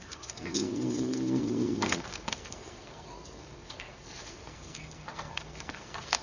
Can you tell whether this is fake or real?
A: fake